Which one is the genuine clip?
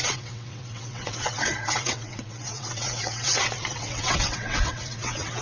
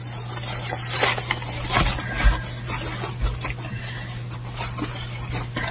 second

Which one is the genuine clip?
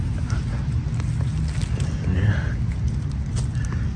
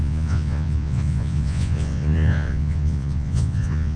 first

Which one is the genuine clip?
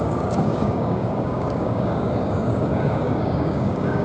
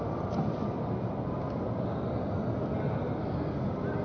second